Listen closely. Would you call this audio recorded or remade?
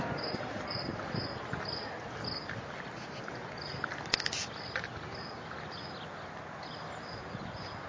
recorded